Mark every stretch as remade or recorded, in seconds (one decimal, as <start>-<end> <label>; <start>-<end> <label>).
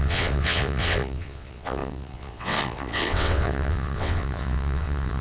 0.0-5.2 remade